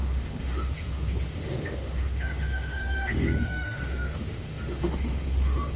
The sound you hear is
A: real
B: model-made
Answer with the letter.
B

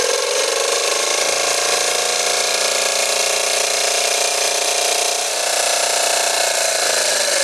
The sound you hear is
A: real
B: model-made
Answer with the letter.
A